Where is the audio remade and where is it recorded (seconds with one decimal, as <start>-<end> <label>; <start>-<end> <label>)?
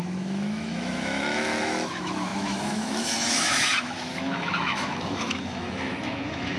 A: 0.0-6.6 remade